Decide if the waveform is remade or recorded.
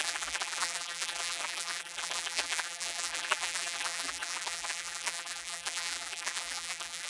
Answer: remade